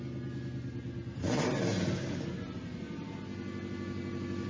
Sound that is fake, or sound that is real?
real